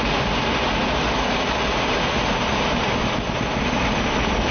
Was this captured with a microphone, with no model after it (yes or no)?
yes